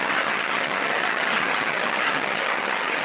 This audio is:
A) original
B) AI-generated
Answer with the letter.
B